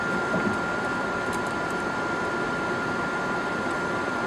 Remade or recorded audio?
remade